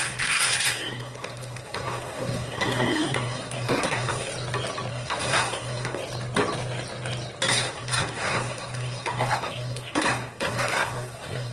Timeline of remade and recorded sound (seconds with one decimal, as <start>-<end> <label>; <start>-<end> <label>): 0.0-4.3 remade; 4.3-4.9 recorded; 4.9-6.0 remade; 6.0-7.5 recorded; 7.5-11.5 remade